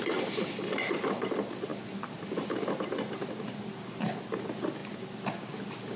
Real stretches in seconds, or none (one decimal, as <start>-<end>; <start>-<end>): 0.0-6.0